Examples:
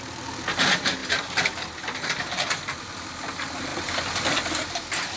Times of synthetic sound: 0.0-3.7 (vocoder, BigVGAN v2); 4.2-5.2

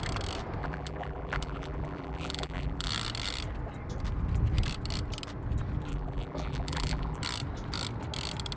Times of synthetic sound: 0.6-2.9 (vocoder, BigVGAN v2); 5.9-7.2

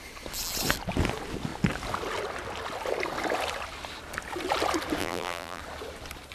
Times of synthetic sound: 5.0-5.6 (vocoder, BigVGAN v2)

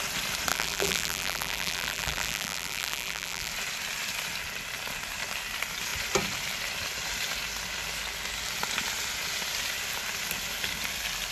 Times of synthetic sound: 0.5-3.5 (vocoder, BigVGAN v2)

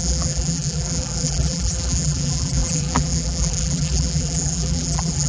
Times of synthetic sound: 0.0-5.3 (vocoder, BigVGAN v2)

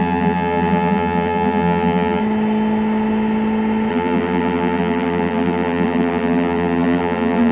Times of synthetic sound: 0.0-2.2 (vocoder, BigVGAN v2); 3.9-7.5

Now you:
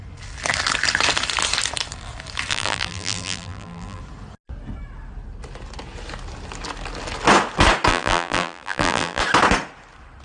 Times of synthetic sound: 2.5-4.0 (vocoder, BigVGAN v2); 7.9-9.2